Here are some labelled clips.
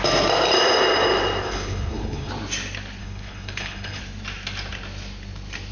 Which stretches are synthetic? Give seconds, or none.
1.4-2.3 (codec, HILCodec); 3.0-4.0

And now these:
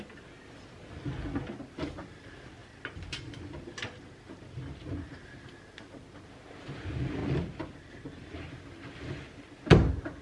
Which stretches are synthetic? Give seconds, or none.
2.6-5.1 (vocoder, BigVGAN v2); 7.2-8.5

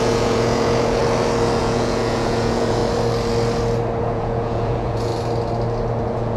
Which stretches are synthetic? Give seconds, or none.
0.0-1.0 (vocoder, Vocos); 1.6-2.8; 4.0-5.1; 6.0-6.4

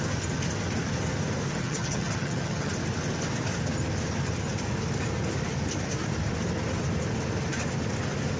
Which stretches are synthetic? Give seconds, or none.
1.6-2.7 (vocoder, HiFi-GAN)

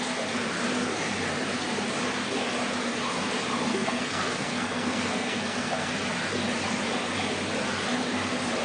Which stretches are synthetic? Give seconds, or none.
3.7-5.9 (codec, SNAC)

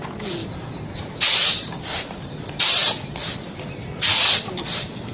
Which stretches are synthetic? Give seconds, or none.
0.4-3.0 (vocoder, BigVGAN v2)